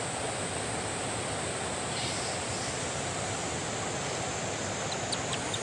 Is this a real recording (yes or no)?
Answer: yes